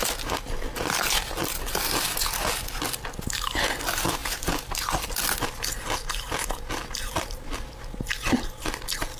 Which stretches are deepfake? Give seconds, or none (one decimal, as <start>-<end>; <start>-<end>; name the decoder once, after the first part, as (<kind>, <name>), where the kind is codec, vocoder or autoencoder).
none